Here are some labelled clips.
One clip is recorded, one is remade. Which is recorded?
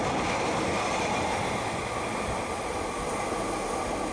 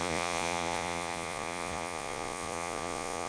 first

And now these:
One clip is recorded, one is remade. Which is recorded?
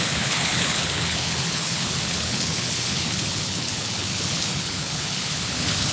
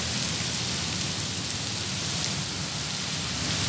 second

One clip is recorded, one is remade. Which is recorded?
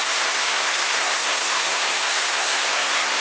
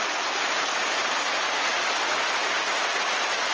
second